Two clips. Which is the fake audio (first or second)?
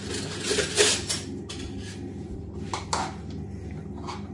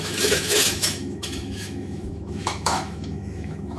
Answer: second